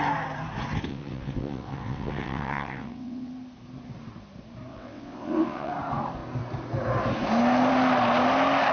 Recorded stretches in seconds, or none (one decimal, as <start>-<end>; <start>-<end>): 0.0-0.9; 3.3-4.7; 5.7-8.7